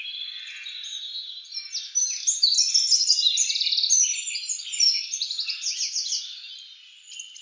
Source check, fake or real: real